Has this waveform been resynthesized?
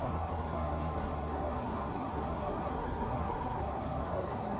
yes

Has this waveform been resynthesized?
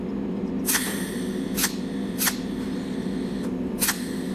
no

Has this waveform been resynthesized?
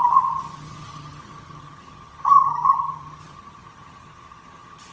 yes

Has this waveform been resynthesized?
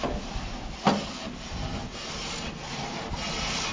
no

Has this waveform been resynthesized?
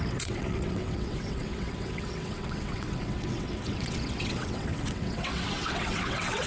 yes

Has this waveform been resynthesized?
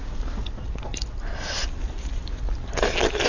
no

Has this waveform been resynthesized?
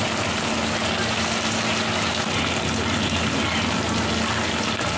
no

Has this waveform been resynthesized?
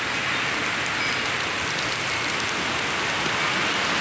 no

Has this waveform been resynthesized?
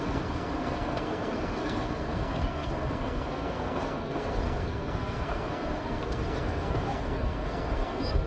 yes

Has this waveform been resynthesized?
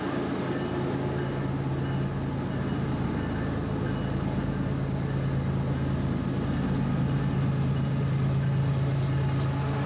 no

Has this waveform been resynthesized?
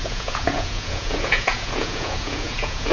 yes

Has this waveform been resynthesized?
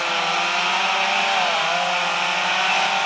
no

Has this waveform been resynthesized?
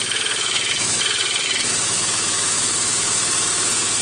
yes